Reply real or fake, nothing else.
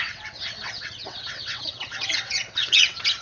fake